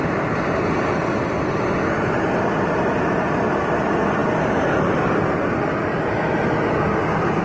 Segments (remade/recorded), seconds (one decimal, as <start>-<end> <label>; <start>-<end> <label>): 0.0-7.4 recorded